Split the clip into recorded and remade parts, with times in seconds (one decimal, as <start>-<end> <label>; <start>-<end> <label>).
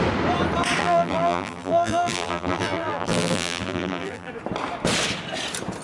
0.0-0.8 recorded; 0.8-4.3 remade; 4.3-5.8 recorded